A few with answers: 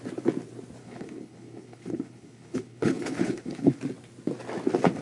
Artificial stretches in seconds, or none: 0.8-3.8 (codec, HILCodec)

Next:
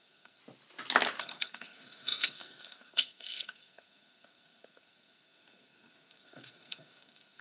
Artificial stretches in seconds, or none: 0.0-0.4 (codec, SNAC); 1.2-7.4

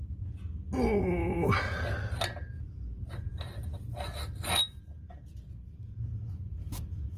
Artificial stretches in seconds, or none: none

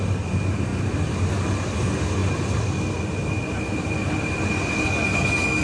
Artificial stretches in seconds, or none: none

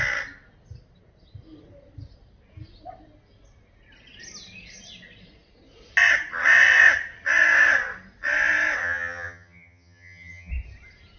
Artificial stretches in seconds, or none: 8.8-10.5 (vocoder, HiFi-GAN)

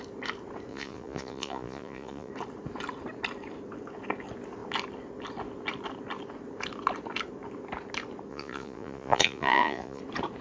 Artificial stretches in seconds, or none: 0.7-2.3 (vocoder, Vocos); 8.3-10.0

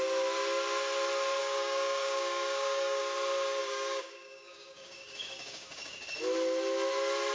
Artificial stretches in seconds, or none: 1.4-3.0 (codec, DAC); 3.6-6.0